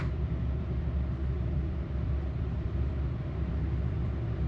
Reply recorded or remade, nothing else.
remade